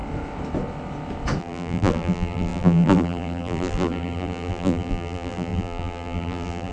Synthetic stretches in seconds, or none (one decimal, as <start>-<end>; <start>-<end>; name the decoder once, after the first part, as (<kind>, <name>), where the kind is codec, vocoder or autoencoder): 1.4-6.7 (vocoder, BigVGAN v2)